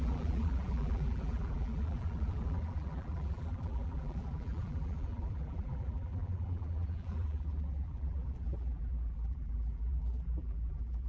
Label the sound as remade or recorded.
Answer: remade